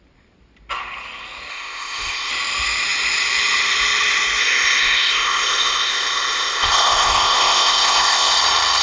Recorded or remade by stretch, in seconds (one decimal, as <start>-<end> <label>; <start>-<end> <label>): 0.0-1.5 recorded; 1.5-2.3 remade; 2.3-4.4 recorded; 4.4-8.4 remade; 8.4-8.8 recorded